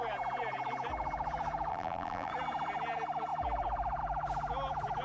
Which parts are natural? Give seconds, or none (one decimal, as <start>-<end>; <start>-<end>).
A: 0.0-1.7; 2.3-5.0